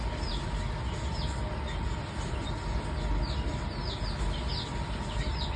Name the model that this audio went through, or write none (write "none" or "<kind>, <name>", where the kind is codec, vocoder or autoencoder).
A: none